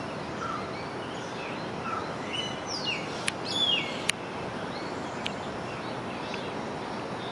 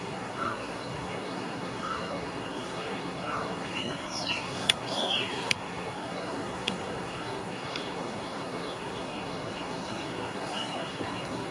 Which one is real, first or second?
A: first